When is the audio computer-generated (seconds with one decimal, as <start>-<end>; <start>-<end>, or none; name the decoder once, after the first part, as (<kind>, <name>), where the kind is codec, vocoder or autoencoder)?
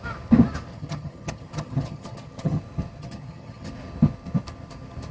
0.7-2.6 (vocoder, HiFi-GAN); 3.0-3.7